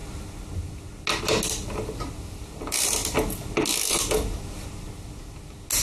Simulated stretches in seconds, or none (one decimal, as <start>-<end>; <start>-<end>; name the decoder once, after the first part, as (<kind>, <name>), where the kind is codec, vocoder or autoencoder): none